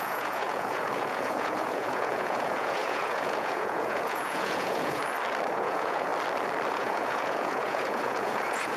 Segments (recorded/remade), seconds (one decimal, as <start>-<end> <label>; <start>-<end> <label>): 0.0-5.0 remade; 5.0-5.5 recorded; 5.5-6.1 remade; 6.1-6.7 recorded; 6.7-8.8 remade